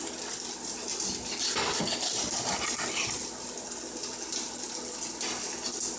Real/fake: real